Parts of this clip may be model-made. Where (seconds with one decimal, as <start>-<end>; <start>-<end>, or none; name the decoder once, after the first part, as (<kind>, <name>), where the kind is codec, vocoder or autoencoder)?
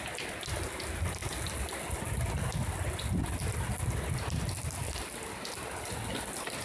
none